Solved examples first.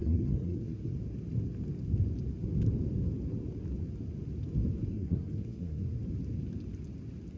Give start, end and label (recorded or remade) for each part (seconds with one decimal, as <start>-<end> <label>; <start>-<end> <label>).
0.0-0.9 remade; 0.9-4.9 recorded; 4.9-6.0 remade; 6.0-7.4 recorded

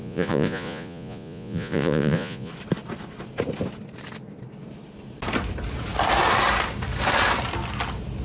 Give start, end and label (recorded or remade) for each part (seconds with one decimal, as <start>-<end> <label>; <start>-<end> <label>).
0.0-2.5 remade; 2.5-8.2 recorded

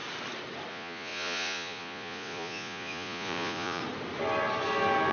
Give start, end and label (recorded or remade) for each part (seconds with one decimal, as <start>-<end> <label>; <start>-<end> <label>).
0.0-0.7 recorded; 0.7-3.8 remade; 3.8-5.1 recorded